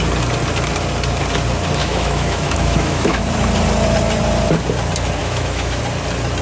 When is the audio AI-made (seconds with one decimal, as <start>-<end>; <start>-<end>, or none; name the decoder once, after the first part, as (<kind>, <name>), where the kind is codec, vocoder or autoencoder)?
1.8-3.2 (autoencoder, DAC-VAE); 5.2-5.8